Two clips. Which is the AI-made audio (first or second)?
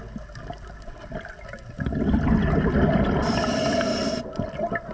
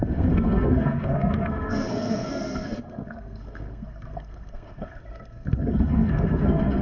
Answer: second